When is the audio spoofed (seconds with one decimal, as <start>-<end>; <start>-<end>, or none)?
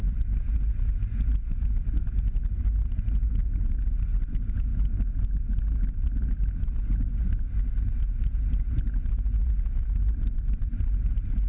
none